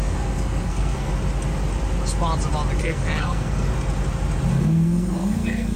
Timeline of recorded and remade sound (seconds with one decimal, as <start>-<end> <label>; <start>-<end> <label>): 0.0-1.1 remade; 1.1-2.8 recorded; 2.8-3.7 remade; 3.7-4.5 recorded; 4.5-5.8 remade